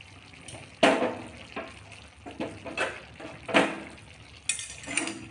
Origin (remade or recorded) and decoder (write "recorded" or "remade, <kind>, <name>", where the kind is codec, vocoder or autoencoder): recorded